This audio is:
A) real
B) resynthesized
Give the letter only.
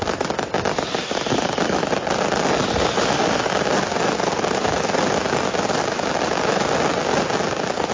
A